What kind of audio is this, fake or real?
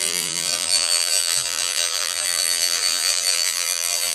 fake